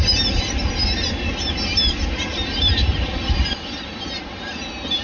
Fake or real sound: real